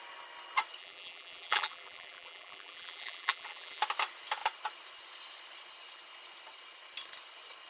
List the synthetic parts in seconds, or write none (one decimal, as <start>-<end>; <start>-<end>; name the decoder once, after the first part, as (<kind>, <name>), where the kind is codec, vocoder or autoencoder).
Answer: 0.8-3.8 (vocoder, BigVGAN v2)